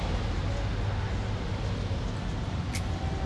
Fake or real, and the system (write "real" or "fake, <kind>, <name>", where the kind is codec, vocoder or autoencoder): real